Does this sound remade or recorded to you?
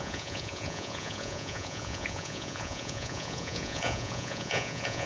remade